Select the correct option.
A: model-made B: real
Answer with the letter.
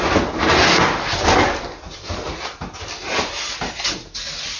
B